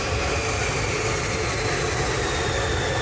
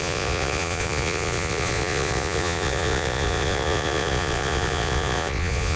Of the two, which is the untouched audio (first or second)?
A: first